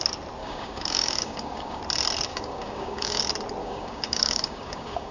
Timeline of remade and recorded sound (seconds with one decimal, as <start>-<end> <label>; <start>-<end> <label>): 0.0-0.4 recorded; 0.4-1.8 remade; 1.8-2.3 recorded; 2.3-3.2 remade; 3.2-3.6 recorded; 3.6-5.1 remade